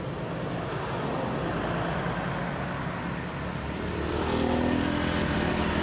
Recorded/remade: recorded